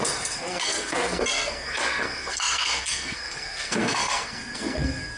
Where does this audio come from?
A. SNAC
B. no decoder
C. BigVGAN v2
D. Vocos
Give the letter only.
A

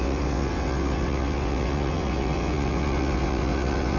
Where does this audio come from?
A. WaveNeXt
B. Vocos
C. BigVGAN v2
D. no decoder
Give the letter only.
A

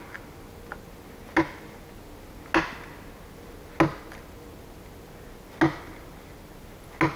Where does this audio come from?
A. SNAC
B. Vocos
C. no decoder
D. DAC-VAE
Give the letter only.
C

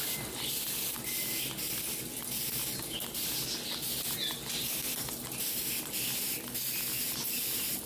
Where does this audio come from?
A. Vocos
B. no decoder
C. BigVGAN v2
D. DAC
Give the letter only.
B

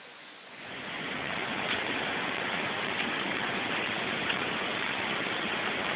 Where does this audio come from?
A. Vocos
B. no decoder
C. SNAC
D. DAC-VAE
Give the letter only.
A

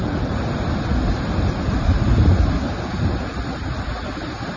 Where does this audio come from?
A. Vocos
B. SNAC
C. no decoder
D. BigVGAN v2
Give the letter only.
C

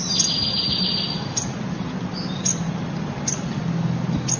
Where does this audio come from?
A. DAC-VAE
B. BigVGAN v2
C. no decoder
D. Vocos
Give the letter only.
C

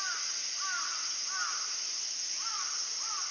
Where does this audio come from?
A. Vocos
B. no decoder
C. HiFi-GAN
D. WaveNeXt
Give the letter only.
B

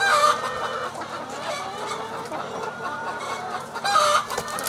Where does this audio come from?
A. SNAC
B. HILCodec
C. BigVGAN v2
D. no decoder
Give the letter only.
D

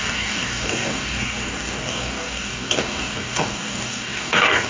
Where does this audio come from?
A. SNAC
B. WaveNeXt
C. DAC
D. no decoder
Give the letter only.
C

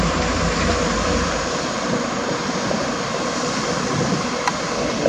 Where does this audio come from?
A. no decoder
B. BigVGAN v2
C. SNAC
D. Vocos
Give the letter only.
A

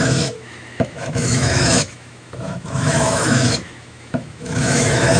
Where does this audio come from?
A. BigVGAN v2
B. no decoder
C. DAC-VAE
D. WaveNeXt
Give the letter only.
C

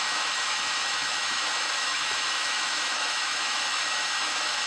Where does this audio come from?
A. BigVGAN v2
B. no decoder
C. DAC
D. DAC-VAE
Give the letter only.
D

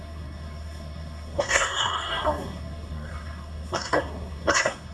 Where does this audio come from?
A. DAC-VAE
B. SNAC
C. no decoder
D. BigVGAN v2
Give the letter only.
B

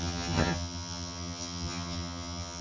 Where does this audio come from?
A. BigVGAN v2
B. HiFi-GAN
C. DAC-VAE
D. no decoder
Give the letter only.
B